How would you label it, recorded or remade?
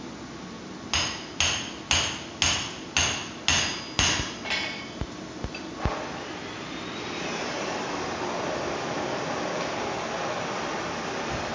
recorded